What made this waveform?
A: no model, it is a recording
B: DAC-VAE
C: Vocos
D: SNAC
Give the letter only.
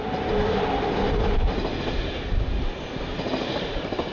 A